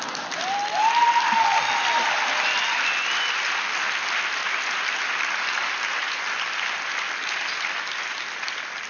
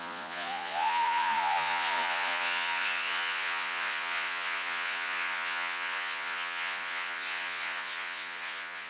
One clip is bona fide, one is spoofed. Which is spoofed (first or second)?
second